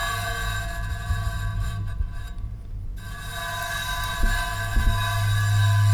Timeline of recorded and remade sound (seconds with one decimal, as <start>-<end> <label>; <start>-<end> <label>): 0.0-1.5 recorded; 1.5-2.9 remade; 2.9-5.9 recorded